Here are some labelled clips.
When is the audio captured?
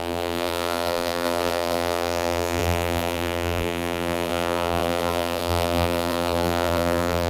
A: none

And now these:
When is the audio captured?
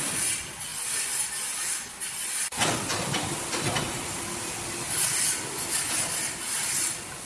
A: 0.0-7.3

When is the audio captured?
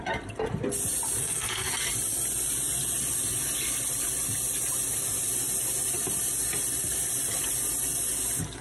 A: 0.0-1.2; 1.7-8.6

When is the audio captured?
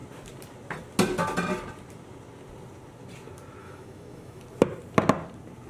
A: 0.0-3.6; 4.4-5.7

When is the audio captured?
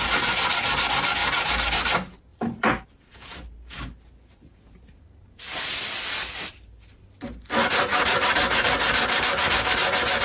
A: 0.0-1.2; 1.9-2.3; 5.4-7.9; 9.7-10.2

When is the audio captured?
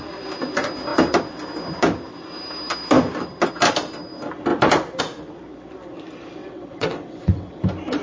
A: 0.0-6.4; 7.6-8.0